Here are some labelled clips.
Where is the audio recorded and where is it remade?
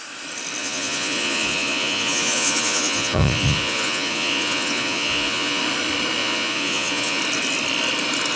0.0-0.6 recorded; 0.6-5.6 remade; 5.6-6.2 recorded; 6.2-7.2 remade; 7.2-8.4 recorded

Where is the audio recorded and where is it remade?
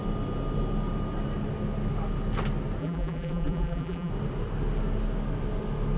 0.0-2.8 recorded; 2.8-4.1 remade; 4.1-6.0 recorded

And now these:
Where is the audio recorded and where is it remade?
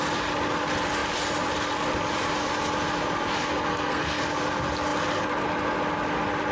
0.0-3.7 recorded; 3.7-4.2 remade; 4.2-6.5 recorded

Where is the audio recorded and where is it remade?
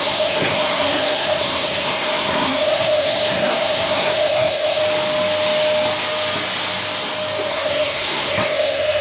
0.0-4.8 remade; 4.8-7.5 recorded; 7.5-9.0 remade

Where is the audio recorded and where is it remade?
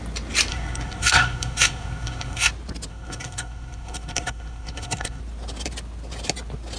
0.0-0.5 recorded; 0.5-2.5 remade; 2.5-2.9 recorded; 2.9-5.2 remade; 5.2-6.8 recorded